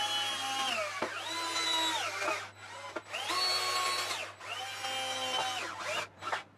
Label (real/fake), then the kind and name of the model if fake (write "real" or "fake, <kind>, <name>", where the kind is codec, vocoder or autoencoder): real